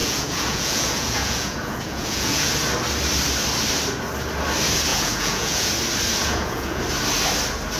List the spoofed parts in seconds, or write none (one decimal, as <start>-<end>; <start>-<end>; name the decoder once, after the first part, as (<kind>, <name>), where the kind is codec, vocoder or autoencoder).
0.0-2.5 (vocoder, Vocos); 4.9-5.7; 6.2-6.8